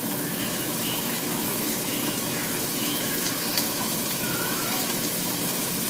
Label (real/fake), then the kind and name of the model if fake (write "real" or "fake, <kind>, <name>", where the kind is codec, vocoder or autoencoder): fake, autoencoder, DAC-VAE